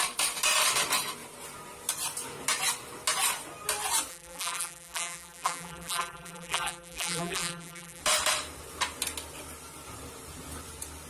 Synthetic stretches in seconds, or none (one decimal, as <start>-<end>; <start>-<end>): 4.1-8.0